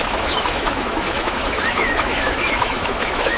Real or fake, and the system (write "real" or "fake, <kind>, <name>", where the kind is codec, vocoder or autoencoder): fake, autoencoder, DAC-VAE